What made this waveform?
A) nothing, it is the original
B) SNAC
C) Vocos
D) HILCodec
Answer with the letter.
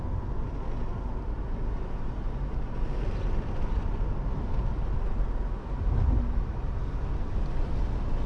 A